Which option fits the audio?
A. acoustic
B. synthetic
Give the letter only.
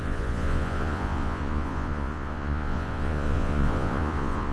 B